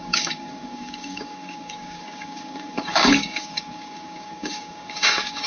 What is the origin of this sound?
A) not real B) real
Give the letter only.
A